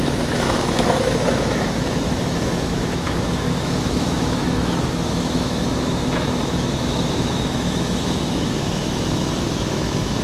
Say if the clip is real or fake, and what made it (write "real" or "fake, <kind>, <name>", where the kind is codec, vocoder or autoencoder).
fake, autoencoder, DAC-VAE